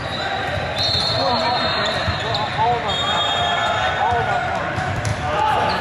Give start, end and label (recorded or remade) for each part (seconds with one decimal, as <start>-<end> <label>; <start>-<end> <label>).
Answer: 0.0-2.5 remade; 2.5-4.0 recorded; 4.0-5.8 remade

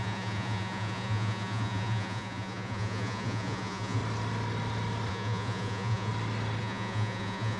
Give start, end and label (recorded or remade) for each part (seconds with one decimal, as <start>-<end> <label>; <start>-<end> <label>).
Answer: 0.0-4.0 remade; 4.0-5.1 recorded; 5.1-6.1 remade; 6.1-6.6 recorded; 6.6-7.6 remade

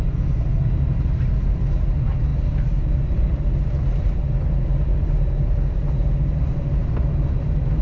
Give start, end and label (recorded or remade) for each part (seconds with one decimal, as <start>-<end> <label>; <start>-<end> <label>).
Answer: 0.0-2.3 recorded; 2.3-3.5 remade; 3.5-7.8 recorded

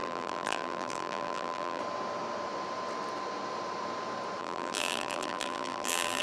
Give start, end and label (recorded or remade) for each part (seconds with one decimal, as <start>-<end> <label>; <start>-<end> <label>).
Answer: 0.0-1.8 remade; 1.8-4.4 recorded; 4.4-6.2 remade

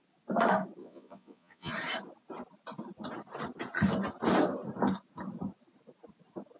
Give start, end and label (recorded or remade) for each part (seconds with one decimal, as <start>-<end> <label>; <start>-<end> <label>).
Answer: 0.0-0.8 recorded; 0.8-1.7 remade; 1.7-6.6 recorded

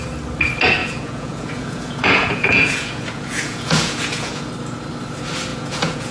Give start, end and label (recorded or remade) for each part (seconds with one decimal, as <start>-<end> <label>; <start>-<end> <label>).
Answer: 0.0-0.8 recorded; 0.8-4.5 remade; 4.5-5.5 recorded; 5.5-6.1 remade